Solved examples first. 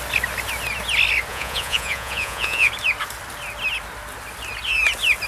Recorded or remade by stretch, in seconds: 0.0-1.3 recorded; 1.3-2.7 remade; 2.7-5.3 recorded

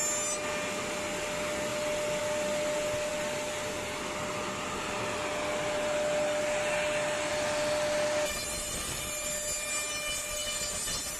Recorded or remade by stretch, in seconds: 0.0-11.2 recorded

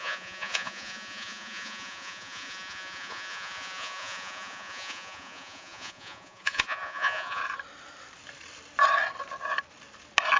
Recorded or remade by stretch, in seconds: 0.0-7.4 remade; 7.4-10.4 recorded

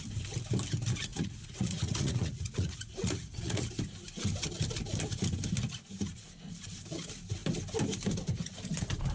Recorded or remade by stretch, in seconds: 0.0-1.1 recorded; 1.1-3.7 remade; 3.7-9.1 recorded

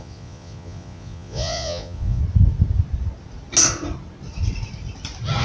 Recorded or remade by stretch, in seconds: 0.0-2.2 remade; 2.2-5.4 recorded

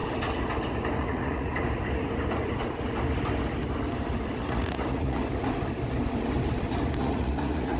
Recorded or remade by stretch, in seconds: 0.0-1.0 recorded; 1.0-1.5 remade; 1.5-4.4 recorded; 4.4-5.2 remade; 5.2-7.0 recorded; 7.0-7.8 remade